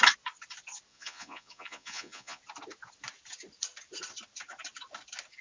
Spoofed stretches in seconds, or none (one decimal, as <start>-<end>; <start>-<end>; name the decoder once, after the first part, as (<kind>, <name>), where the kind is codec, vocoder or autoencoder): 0.9-2.4 (vocoder, Vocos)